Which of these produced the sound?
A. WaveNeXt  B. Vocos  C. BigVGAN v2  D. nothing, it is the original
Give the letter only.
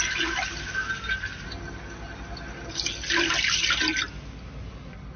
D